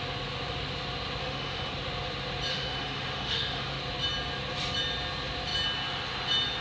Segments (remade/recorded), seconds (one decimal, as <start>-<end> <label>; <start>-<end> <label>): 0.0-1.2 recorded; 1.2-1.7 remade; 1.7-2.5 recorded; 2.5-3.8 remade; 3.8-6.6 recorded